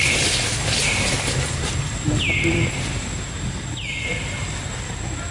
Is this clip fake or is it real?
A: real